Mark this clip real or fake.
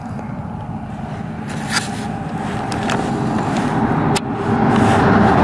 real